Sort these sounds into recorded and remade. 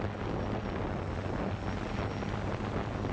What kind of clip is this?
recorded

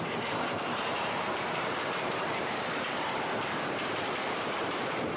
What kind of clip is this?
remade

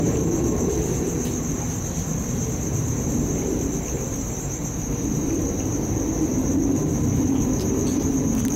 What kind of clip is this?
remade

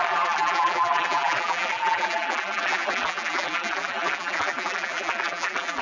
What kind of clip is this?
remade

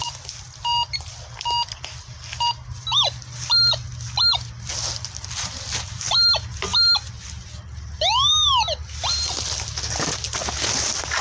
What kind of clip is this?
recorded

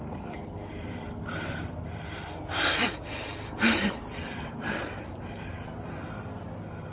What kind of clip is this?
recorded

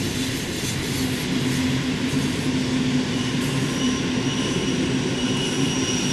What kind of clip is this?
recorded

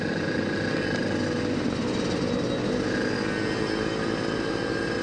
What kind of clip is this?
recorded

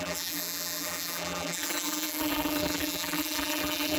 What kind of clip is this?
remade